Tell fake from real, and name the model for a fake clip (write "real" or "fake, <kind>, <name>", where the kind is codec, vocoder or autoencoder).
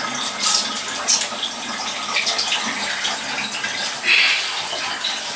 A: real